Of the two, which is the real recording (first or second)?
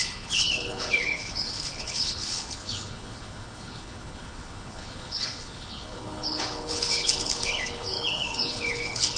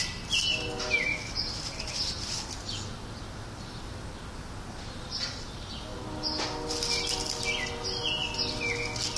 second